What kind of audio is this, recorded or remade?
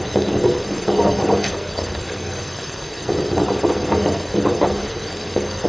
remade